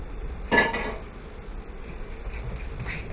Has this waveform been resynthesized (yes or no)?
no